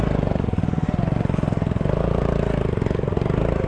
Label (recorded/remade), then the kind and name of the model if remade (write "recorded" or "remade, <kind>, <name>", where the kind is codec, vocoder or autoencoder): recorded